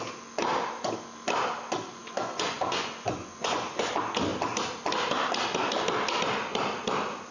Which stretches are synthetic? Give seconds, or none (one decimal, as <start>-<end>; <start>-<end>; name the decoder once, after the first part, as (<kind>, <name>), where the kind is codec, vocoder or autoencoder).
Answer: 2.0-3.9 (vocoder, Vocos)